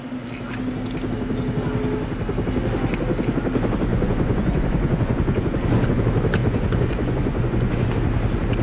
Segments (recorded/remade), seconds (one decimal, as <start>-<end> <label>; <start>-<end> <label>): 0.0-3.9 recorded; 3.9-6.0 remade; 6.0-6.4 recorded; 6.4-7.9 remade; 7.9-8.6 recorded